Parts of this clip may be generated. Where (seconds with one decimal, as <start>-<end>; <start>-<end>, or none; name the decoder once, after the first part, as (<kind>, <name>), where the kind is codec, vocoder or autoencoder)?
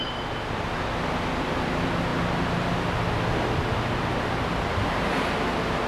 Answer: none